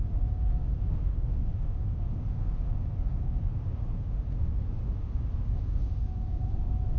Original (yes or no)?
no